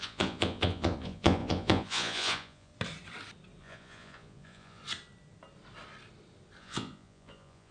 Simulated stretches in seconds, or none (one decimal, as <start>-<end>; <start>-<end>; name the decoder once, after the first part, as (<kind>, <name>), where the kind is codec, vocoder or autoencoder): 0.0-2.7 (vocoder, Vocos); 3.6-4.8; 6.6-7.7